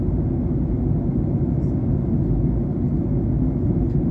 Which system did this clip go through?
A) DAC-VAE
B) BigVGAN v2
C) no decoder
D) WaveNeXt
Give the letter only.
C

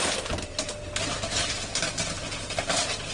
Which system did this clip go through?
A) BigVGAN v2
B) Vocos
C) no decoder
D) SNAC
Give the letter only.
C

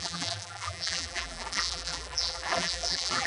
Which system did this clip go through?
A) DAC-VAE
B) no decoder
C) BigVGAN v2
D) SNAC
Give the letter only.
C